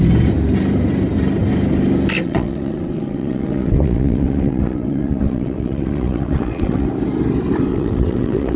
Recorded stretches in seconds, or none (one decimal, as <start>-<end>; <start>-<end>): 0.0-2.2; 6.9-7.7